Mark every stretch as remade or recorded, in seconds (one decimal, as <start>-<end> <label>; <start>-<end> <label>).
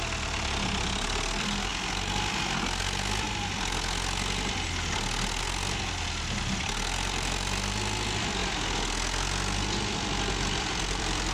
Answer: 0.0-1.7 remade; 1.7-5.4 recorded; 5.4-8.4 remade; 8.4-10.5 recorded; 10.5-11.3 remade